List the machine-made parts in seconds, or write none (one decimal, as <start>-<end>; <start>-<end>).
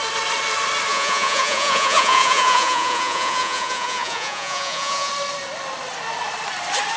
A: 0.9-5.1